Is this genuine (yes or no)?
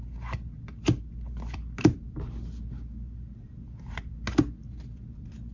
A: yes